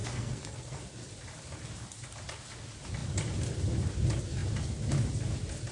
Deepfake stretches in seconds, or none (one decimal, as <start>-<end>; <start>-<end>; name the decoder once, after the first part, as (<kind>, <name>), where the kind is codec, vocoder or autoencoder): 0.0-0.8 (codec, SNAC)

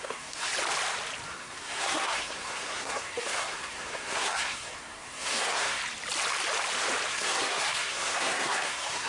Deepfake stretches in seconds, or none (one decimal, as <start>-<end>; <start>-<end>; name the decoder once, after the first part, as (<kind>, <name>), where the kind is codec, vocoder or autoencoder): 0.0-0.5 (codec, SNAC); 1.3-5.8; 7.1-9.1

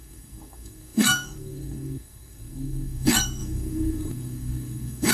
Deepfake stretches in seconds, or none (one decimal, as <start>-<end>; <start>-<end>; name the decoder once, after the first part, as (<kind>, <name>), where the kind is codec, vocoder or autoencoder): 0.0-5.1 (codec, SNAC)